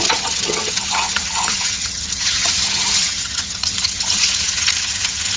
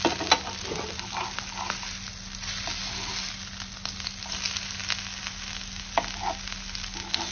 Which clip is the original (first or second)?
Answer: second